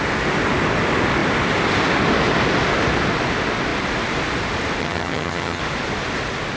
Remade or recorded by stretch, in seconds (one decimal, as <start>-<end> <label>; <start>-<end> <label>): 0.0-4.8 recorded; 4.8-5.6 remade; 5.6-6.6 recorded